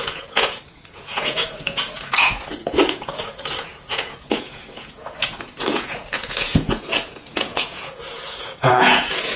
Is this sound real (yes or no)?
no